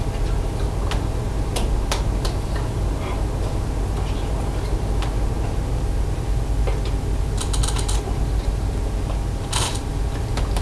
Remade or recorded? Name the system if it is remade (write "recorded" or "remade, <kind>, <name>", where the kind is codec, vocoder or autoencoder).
recorded